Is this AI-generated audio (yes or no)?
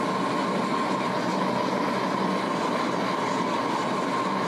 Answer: no